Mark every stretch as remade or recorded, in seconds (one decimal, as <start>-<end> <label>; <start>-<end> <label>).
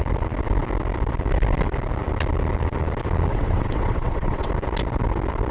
0.0-3.3 recorded; 3.3-4.5 remade; 4.5-5.5 recorded